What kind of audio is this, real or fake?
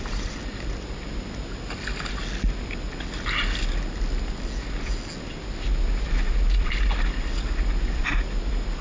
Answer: real